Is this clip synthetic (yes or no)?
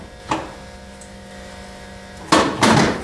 no